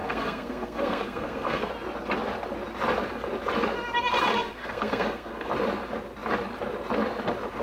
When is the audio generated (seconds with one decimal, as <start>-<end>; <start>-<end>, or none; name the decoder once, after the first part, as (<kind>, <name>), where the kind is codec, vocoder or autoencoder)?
0.0-1.7 (codec, SNAC); 4.3-5.5